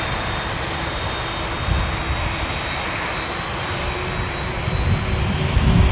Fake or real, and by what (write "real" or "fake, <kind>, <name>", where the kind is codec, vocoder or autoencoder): real